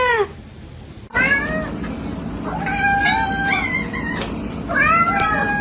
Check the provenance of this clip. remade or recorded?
recorded